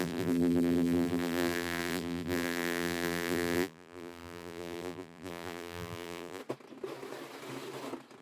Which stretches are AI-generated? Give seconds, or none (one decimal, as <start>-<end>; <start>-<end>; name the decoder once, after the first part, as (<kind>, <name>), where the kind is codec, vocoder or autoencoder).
0.0-6.4 (vocoder, BigVGAN v2)

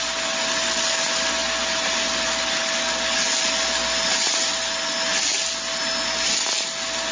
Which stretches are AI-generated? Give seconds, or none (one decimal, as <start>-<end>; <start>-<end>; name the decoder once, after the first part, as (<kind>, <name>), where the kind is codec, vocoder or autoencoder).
none